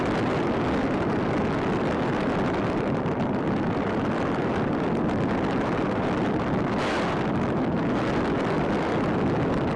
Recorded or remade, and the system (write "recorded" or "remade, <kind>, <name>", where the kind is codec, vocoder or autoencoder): recorded